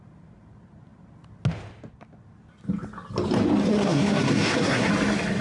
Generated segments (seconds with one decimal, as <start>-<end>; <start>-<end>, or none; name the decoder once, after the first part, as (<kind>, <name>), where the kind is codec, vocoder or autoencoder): 3.7-4.9 (codec, SNAC)